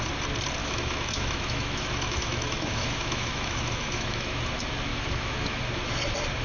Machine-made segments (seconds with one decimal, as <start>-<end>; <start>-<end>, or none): 0.6-4.4; 4.9-5.6